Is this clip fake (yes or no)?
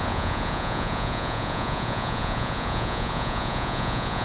yes